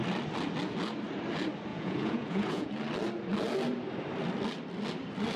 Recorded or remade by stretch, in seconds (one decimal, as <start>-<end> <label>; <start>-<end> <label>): 0.0-1.7 recorded; 1.7-2.7 remade; 2.7-5.4 recorded